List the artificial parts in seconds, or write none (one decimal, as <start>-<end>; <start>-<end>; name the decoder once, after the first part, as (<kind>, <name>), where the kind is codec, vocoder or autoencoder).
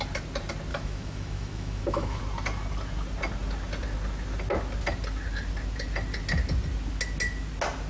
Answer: 0.7-2.2 (autoencoder, DAC-VAE)